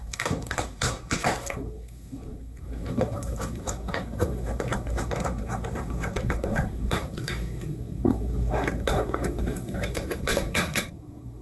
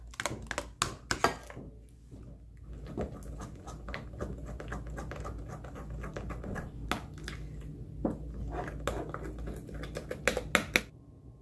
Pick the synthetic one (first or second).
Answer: first